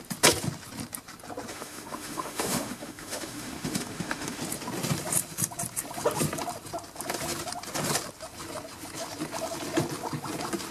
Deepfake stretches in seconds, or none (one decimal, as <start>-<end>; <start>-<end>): 1.5-4.4

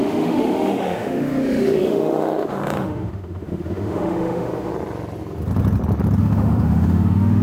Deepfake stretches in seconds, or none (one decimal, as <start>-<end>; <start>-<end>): 0.0-4.7; 6.2-7.4

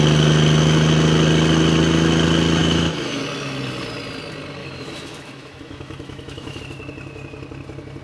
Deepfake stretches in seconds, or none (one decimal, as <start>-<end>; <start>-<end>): 2.6-3.2; 4.6-6.6